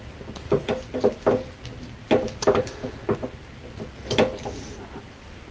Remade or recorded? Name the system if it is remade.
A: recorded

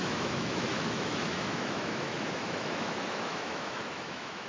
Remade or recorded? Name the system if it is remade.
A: remade, autoencoder, DAC-VAE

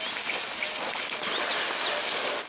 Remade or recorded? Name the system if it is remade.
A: recorded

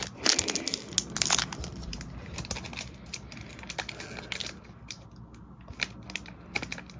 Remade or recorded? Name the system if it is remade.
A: recorded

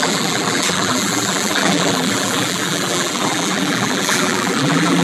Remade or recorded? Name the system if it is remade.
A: remade, vocoder, BigVGAN v2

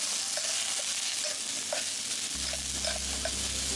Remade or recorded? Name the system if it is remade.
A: recorded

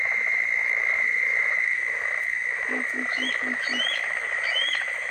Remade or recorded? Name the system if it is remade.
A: remade, autoencoder, DAC-VAE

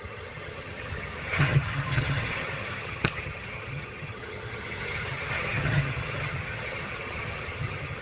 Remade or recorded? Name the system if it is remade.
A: remade, vocoder, HiFi-GAN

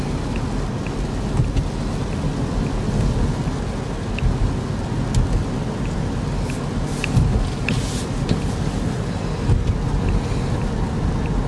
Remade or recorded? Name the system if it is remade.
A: recorded